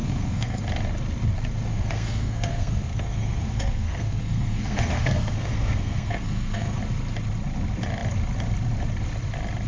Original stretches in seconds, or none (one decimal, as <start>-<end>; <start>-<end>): 0.6-1.7; 6.8-9.7